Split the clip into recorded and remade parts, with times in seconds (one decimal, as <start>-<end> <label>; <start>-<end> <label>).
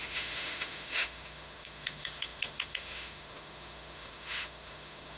0.0-5.2 remade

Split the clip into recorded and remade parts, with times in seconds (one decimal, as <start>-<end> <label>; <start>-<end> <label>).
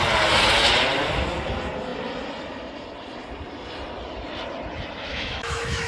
0.0-5.1 recorded; 5.1-5.9 remade